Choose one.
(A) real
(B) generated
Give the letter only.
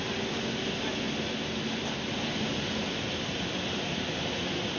A